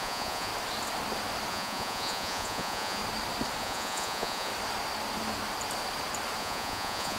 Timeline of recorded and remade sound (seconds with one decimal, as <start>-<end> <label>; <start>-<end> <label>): 0.0-0.5 remade; 0.5-1.5 recorded; 1.5-3.0 remade; 3.0-3.6 recorded; 3.6-4.5 remade; 4.5-6.4 recorded; 6.4-7.2 remade